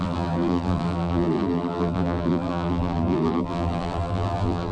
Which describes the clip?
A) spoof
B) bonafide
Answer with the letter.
A